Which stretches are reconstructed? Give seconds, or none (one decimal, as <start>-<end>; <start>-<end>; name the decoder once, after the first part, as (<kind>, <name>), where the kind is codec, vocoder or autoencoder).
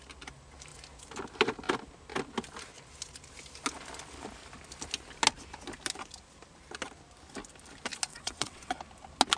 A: 8.1-8.8 (vocoder, WaveNeXt)